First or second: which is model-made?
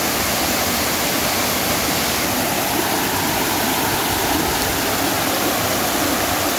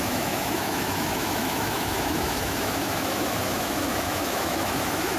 second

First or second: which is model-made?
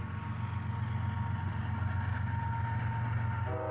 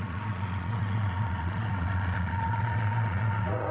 second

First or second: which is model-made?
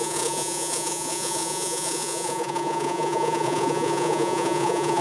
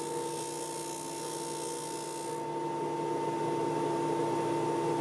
first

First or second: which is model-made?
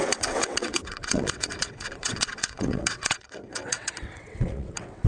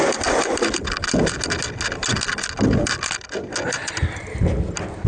first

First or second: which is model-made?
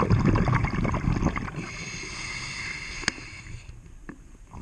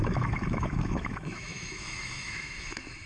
second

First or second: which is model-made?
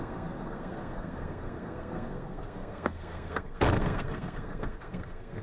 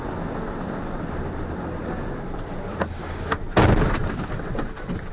first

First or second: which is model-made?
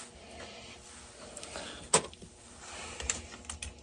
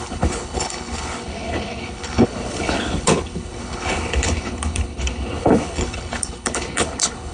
second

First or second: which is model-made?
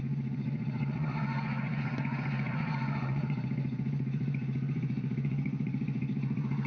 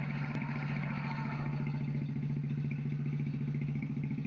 first